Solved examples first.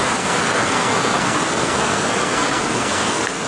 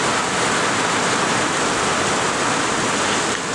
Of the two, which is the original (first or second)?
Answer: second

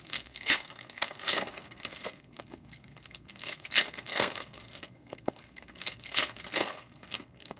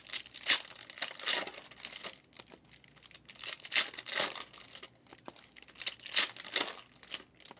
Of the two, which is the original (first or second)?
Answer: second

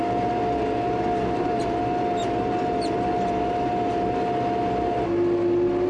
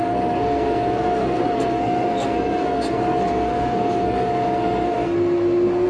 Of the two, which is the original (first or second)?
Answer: first